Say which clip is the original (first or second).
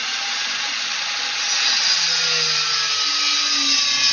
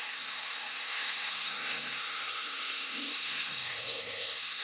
first